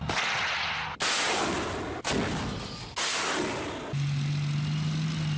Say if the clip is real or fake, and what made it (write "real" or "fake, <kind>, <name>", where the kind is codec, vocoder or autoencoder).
real